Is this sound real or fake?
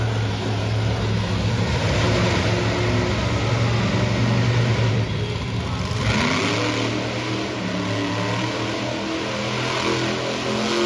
real